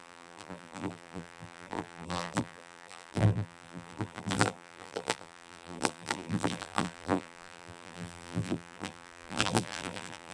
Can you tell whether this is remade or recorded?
remade